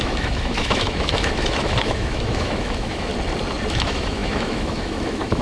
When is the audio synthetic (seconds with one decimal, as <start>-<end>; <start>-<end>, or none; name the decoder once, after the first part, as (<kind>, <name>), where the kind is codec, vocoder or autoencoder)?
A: 0.0-3.1 (autoencoder, DAC-VAE); 3.7-5.4